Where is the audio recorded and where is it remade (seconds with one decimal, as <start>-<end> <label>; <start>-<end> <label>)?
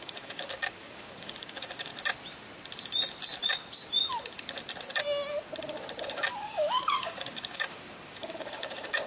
0.0-1.9 remade; 1.9-6.0 recorded; 6.0-9.1 remade